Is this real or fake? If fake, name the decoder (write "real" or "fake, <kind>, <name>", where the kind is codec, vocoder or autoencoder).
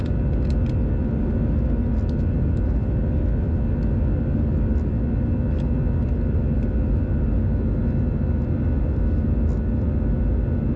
real